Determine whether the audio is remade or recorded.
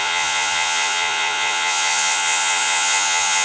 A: remade